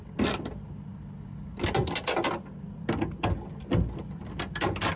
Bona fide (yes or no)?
yes